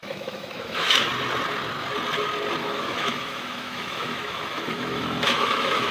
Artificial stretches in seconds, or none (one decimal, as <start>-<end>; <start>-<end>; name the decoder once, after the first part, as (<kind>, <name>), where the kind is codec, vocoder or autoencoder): 0.0-1.1 (autoencoder, DAC-VAE); 2.6-5.9